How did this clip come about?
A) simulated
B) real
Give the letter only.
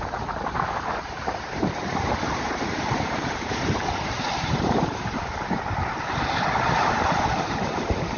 A